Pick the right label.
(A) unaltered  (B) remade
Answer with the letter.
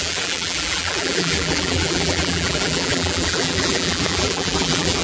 B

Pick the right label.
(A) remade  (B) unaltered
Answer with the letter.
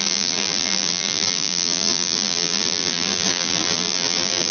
A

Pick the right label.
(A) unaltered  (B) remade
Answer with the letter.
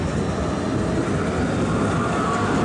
A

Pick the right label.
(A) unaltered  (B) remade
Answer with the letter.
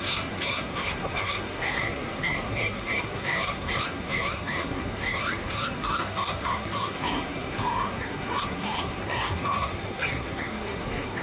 B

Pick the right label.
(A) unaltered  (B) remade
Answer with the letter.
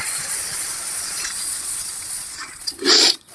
B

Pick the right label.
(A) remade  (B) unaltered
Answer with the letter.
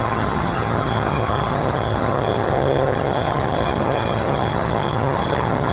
A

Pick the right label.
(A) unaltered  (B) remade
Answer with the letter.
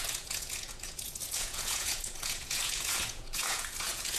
B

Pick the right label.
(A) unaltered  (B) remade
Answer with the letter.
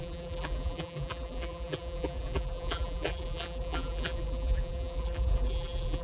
B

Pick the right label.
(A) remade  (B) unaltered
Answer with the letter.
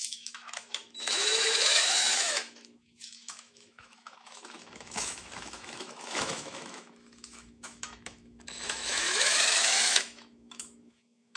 A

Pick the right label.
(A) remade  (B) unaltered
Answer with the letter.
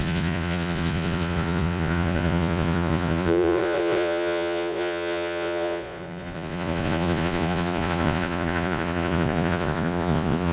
A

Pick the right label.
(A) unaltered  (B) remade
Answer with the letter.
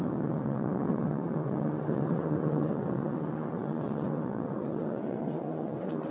B